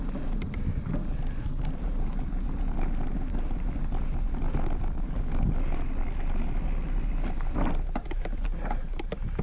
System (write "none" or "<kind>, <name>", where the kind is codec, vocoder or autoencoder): none